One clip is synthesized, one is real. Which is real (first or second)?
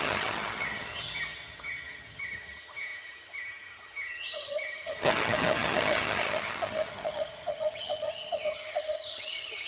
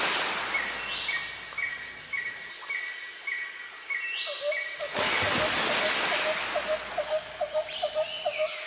second